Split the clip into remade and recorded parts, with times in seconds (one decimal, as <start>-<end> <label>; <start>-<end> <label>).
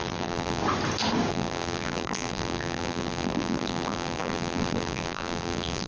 0.0-0.6 remade; 0.6-1.3 recorded; 1.3-5.9 remade